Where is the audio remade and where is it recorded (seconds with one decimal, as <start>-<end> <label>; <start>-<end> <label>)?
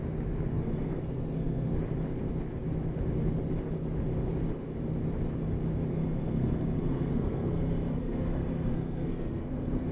0.0-0.5 recorded; 0.5-1.7 remade; 1.7-5.9 recorded; 5.9-9.9 remade